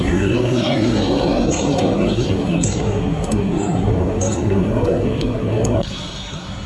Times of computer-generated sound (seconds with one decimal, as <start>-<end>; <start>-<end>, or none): 0.0-6.7